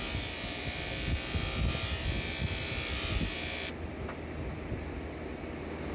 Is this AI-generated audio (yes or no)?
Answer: no